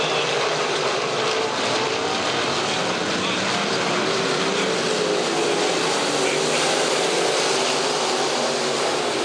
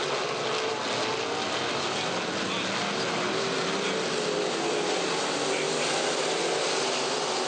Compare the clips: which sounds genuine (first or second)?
second